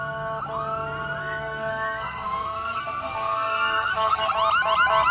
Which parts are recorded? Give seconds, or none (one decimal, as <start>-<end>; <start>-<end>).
0.0-1.2; 4.3-5.1